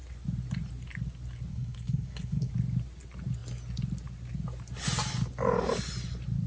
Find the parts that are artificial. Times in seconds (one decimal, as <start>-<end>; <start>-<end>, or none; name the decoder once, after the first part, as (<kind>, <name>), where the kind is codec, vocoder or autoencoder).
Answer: 1.5-2.5 (codec, HILCodec)